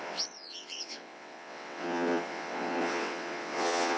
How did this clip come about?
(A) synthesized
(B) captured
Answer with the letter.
A